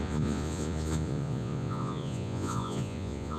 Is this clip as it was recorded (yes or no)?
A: no